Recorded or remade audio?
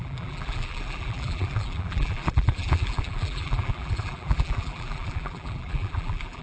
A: remade